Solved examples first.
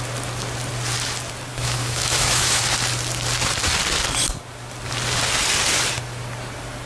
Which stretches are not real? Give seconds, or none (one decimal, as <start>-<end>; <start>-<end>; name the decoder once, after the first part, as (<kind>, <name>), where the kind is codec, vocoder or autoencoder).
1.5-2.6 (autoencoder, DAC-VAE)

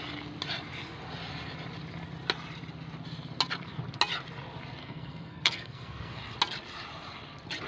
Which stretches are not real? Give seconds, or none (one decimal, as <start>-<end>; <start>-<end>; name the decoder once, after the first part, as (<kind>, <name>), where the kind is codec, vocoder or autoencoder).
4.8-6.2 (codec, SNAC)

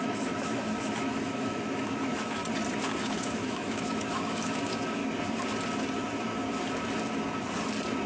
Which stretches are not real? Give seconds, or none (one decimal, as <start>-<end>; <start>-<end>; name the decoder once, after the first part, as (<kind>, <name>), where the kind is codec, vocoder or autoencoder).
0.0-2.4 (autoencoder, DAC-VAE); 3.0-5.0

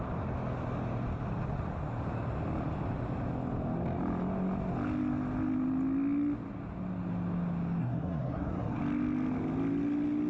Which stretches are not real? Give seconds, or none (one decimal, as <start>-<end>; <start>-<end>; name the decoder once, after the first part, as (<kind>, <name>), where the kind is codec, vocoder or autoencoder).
7.8-8.8 (codec, SNAC)

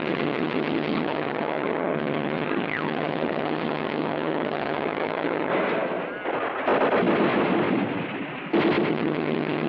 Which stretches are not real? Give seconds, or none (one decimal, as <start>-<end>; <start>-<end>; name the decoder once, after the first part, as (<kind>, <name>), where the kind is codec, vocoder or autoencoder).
0.0-5.5 (vocoder, HiFi-GAN); 8.9-9.7

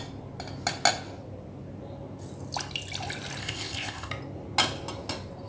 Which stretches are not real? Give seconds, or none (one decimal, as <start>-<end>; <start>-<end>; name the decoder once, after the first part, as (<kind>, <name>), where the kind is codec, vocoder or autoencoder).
3.4-4.1 (codec, ZipCodec)

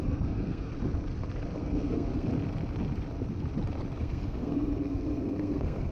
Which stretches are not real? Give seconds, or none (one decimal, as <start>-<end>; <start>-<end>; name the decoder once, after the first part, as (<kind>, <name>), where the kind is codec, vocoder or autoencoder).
0.0-0.7 (codec, SNAC); 1.6-2.3; 4.0-5.9

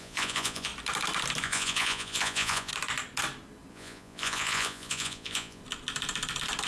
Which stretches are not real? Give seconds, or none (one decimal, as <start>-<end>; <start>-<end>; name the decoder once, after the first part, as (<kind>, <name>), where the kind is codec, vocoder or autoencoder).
0.0-0.7 (vocoder, Vocos); 1.4-2.7; 3.7-5.6